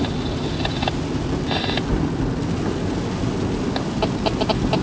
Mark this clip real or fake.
real